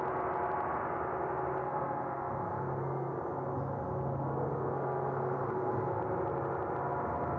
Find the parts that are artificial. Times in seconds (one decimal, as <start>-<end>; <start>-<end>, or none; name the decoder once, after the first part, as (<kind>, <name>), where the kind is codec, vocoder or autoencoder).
1.6-3.1 (codec, SNAC); 4.5-6.0